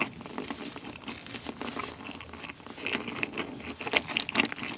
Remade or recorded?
recorded